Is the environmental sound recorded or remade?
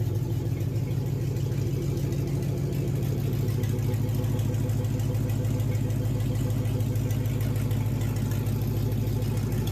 recorded